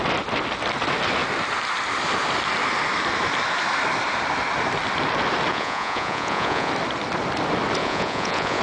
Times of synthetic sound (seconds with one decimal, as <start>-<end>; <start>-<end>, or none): 5.5-6.7; 7.8-8.6